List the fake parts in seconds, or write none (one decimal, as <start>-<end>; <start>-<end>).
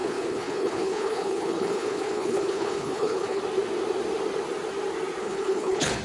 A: 0.0-3.4; 5.2-6.0